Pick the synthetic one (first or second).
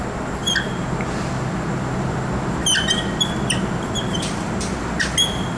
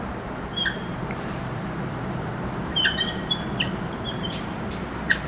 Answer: second